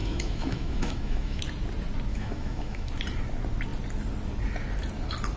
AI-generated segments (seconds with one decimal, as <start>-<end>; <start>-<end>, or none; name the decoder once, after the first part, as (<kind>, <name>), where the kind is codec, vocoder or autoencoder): 0.0-1.4 (autoencoder, DAC-VAE); 2.1-2.9